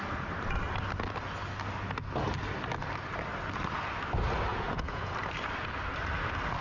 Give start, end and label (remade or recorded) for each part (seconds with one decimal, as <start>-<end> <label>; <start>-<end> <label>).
0.0-4.5 recorded; 4.5-5.1 remade; 5.1-6.6 recorded